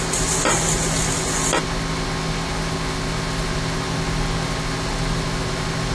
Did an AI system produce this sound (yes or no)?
no